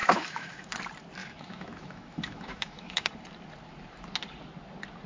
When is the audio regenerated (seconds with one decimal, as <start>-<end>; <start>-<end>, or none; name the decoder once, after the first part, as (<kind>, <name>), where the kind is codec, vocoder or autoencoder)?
0.0-0.7 (autoencoder, DAC-VAE); 1.2-3.1